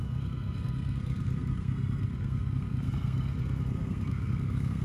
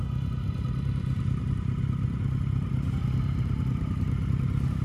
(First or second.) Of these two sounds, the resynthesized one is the first